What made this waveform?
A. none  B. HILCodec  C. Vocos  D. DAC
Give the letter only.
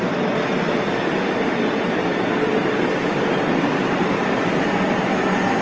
A